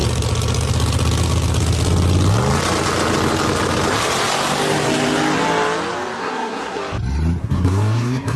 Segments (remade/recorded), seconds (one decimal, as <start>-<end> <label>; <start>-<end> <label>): 0.0-6.2 recorded; 6.2-6.8 remade; 6.8-7.4 recorded; 7.4-8.4 remade